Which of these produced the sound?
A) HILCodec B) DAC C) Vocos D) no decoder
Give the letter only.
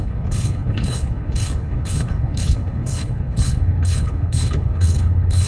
A